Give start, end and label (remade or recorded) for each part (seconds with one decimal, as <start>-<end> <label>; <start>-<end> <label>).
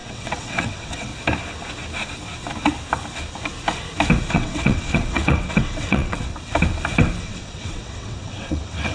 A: 0.0-1.1 remade; 1.1-4.3 recorded; 4.3-6.3 remade; 6.3-7.2 recorded; 7.2-8.9 remade